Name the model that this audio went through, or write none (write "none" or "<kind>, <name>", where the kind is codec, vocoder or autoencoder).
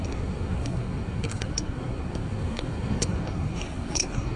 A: codec, SNAC